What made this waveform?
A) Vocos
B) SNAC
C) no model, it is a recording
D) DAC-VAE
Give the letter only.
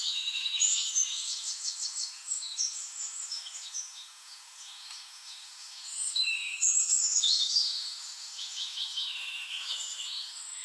D